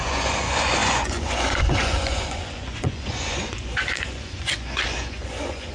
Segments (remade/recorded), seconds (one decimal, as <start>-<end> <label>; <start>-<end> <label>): 0.0-5.7 remade